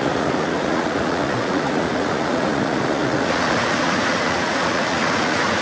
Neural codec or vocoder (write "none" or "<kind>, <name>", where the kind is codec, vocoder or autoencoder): vocoder, Vocos